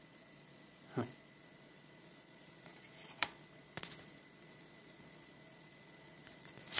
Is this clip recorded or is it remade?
remade